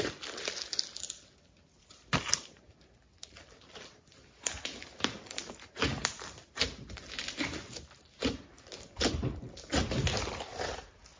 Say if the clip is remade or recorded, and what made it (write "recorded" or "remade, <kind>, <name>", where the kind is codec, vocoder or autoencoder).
recorded